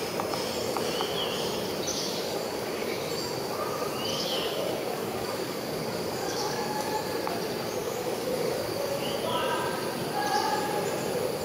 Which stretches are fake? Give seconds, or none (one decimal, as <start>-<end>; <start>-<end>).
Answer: 1.9-3.0; 4.1-6.9; 7.8-9.2

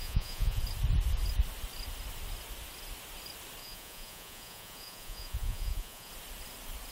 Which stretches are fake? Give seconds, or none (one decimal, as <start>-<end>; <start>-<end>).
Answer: 0.0-0.6; 3.6-6.1

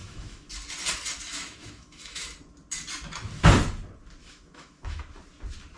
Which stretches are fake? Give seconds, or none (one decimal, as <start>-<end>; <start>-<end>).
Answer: 0.0-0.5; 1.3-2.3; 4.2-5.0